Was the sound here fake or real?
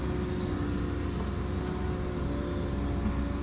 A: real